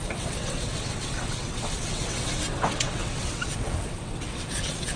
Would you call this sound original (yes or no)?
no